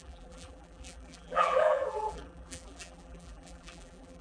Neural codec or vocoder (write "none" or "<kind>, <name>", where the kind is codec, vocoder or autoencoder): vocoder, BigVGAN v2